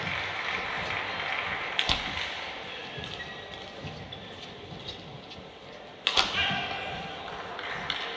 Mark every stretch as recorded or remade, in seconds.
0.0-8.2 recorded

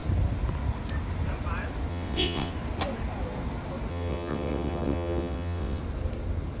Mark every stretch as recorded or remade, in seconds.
0.0-1.9 recorded; 1.9-2.5 remade; 2.5-3.9 recorded; 3.9-5.8 remade; 5.8-6.6 recorded

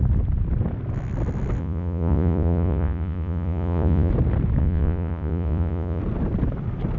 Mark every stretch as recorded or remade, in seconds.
0.0-1.6 recorded; 1.6-4.1 remade; 4.1-4.6 recorded; 4.6-6.0 remade; 6.0-7.0 recorded

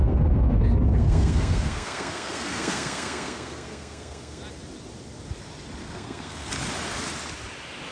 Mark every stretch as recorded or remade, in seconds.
0.0-4.4 remade; 4.4-5.8 recorded; 5.8-6.5 remade; 6.5-7.9 recorded

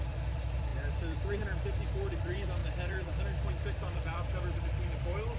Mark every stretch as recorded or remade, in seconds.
0.0-5.4 remade